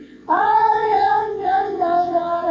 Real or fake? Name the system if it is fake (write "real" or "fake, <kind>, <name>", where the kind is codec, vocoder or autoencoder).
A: fake, vocoder, Vocos